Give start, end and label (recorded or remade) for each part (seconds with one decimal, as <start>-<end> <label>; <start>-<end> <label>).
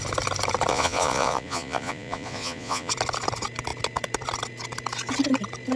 0.0-0.7 recorded; 0.7-2.9 remade; 2.9-5.8 recorded